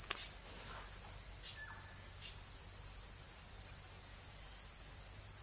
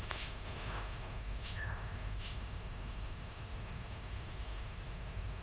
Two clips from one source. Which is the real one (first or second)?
first